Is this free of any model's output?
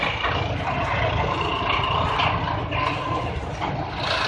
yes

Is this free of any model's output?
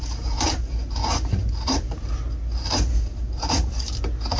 yes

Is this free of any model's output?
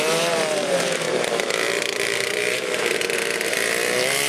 no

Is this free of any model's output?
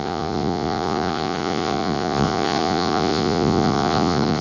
no